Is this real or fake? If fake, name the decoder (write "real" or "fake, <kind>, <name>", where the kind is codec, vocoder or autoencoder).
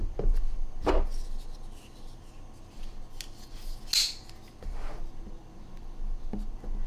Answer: real